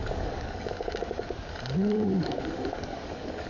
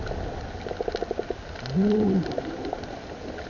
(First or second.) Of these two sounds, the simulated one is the first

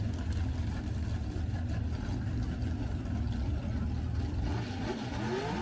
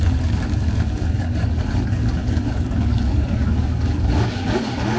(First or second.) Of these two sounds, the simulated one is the second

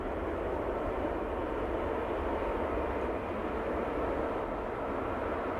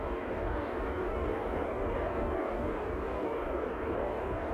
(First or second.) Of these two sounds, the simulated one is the second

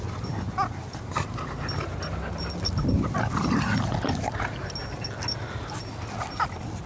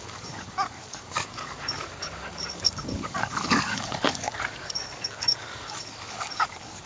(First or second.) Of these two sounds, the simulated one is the second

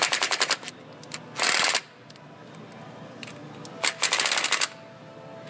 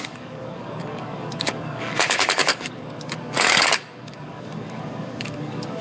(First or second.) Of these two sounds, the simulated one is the second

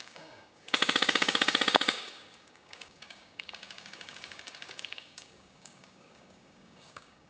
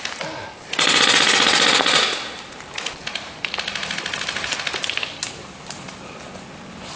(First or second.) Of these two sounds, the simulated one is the first